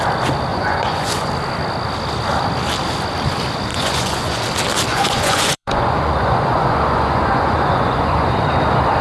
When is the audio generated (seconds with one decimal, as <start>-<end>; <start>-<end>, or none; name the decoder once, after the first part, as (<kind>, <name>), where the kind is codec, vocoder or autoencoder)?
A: 0.5-1.3 (vocoder, Vocos); 3.7-4.4; 4.9-8.3